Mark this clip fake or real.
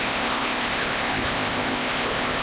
fake